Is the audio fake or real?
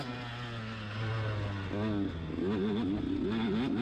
real